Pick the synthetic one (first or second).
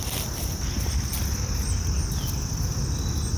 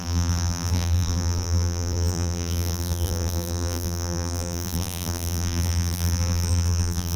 second